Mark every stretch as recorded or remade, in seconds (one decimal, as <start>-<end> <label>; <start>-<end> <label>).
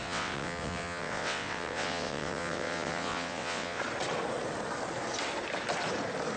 0.0-3.8 remade; 3.8-6.4 recorded